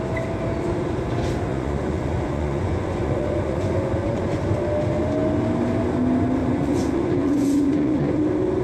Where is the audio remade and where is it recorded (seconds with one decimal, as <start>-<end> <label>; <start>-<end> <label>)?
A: 0.0-1.5 recorded; 1.5-4.4 remade; 4.4-6.4 recorded; 6.4-8.2 remade; 8.2-8.6 recorded

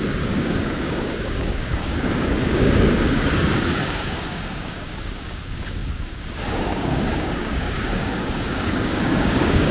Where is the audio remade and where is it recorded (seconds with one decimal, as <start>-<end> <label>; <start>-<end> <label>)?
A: 0.0-9.7 remade

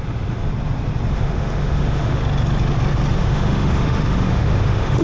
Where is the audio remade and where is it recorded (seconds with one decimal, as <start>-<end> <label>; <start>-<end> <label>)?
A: 0.0-0.5 remade; 0.5-1.1 recorded; 1.1-2.2 remade; 2.2-3.2 recorded; 3.2-5.0 remade

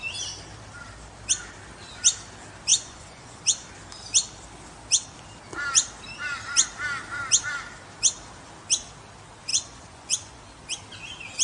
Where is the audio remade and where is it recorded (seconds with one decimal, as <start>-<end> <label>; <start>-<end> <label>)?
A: 0.0-2.7 recorded; 2.7-3.4 remade; 3.4-9.5 recorded; 9.5-10.4 remade; 10.4-11.4 recorded